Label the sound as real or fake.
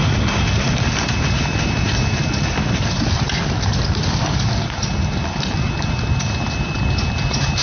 real